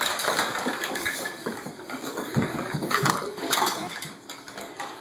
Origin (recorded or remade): remade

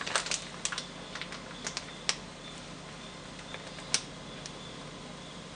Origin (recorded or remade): recorded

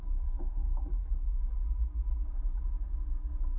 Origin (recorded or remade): recorded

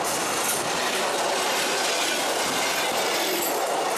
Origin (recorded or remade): recorded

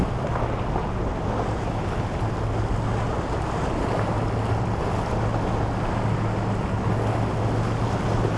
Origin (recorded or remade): recorded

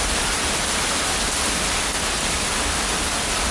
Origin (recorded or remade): recorded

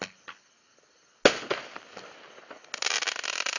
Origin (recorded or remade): recorded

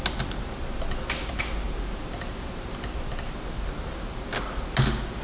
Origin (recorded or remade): recorded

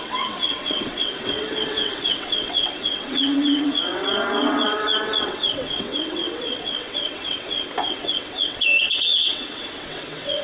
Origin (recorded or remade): remade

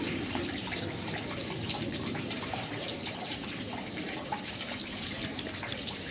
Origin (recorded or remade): remade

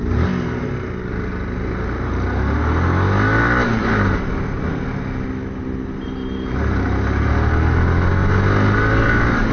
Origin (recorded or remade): recorded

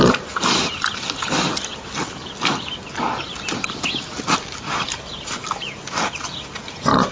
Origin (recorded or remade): recorded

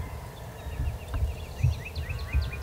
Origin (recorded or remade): recorded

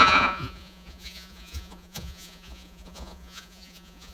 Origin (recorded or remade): remade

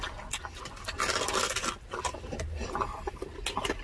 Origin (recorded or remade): recorded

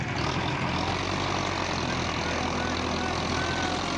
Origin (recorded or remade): recorded